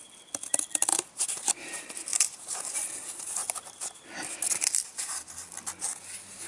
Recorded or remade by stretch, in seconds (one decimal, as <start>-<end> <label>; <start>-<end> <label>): 0.0-0.9 recorded; 0.9-1.5 remade; 1.5-2.1 recorded; 2.1-2.6 remade; 2.6-6.5 recorded